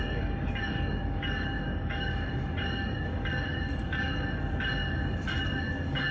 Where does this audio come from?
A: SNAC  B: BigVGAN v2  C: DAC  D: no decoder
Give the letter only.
C